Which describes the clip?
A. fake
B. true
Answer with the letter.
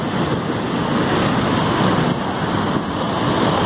B